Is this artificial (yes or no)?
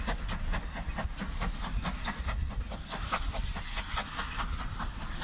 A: no